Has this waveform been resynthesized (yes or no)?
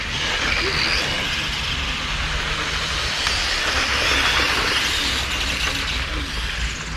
no